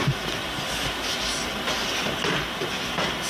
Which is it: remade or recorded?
recorded